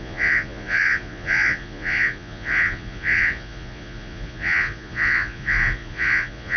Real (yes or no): no